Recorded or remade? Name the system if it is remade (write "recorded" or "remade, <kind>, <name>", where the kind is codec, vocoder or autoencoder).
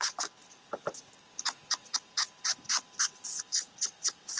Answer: recorded